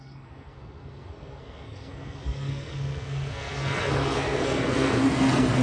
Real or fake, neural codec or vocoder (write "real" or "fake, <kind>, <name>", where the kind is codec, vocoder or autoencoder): fake, codec, SNAC